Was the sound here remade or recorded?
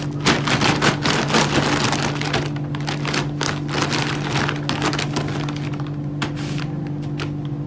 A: recorded